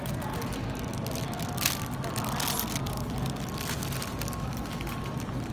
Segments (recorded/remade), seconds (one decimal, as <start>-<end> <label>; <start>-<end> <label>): 0.0-5.5 recorded